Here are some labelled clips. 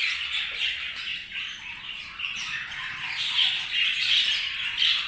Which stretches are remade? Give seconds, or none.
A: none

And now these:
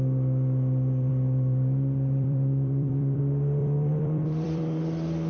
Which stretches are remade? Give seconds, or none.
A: 1.1-3.2 (vocoder, BigVGAN v2); 3.6-4.8